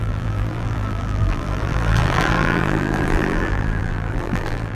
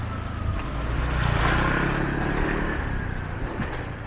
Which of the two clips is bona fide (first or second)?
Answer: second